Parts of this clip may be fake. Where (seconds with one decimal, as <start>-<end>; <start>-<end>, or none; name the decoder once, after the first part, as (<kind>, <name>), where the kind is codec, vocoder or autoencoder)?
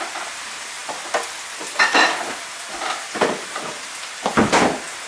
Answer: none